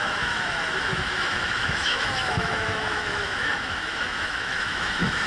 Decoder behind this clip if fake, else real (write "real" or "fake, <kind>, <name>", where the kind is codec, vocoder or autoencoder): fake, autoencoder, DAC-VAE